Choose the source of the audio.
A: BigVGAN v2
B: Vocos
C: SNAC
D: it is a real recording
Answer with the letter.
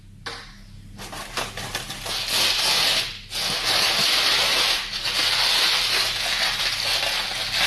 D